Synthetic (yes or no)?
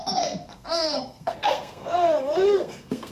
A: yes